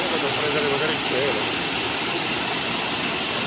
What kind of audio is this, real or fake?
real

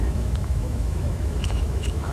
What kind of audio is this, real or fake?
fake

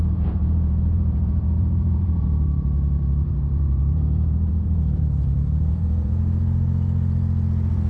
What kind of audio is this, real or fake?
fake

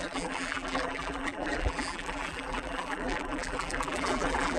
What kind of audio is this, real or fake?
fake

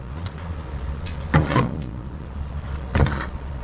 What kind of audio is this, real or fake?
fake